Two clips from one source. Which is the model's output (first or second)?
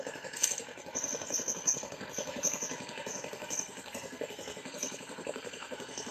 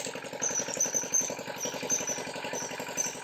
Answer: first